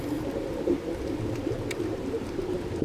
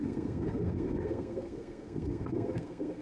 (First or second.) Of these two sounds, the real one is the first